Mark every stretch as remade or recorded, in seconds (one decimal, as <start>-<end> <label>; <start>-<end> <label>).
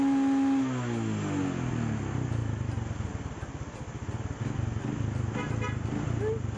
0.0-6.6 recorded